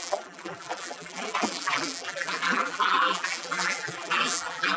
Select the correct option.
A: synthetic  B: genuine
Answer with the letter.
A